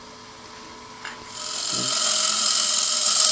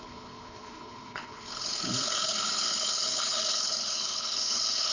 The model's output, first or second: second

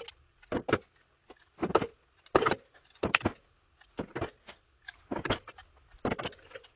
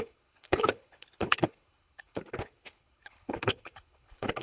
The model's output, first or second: second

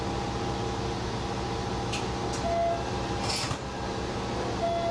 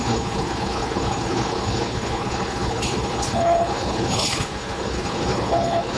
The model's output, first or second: second